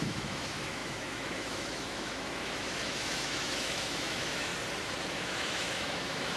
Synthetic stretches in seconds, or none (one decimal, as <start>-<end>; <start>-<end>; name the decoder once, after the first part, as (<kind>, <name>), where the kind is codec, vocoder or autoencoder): 0.0-4.5 (autoencoder, DAC-VAE); 5.1-6.4